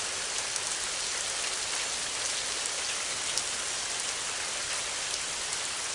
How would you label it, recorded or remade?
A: recorded